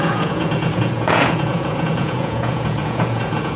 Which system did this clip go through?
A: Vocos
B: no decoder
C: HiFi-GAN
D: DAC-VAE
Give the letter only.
A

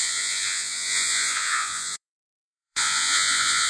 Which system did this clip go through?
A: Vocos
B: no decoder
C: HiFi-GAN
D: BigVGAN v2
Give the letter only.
A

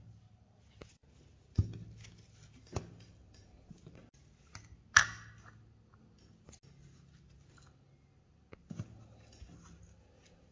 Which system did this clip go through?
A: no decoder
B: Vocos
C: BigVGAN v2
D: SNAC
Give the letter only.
A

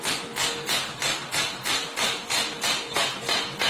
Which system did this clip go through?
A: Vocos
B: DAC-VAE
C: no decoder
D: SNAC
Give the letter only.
C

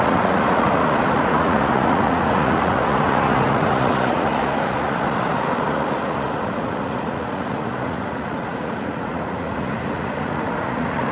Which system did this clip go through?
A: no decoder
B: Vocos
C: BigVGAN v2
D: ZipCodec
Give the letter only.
B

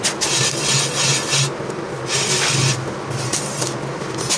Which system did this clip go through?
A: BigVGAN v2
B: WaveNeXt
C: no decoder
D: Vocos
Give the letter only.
C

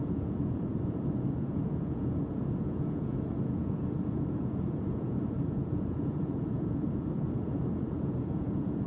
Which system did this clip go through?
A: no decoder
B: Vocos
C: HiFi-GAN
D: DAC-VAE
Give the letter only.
B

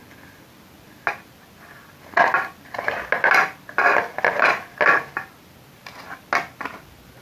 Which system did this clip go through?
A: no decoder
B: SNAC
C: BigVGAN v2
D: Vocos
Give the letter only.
A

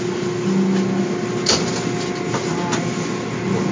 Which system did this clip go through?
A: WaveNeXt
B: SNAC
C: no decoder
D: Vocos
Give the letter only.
C